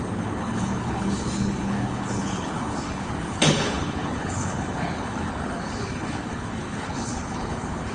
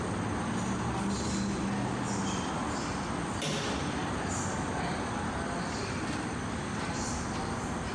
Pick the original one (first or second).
second